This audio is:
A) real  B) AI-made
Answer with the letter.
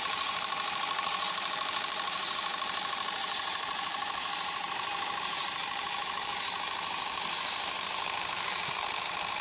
B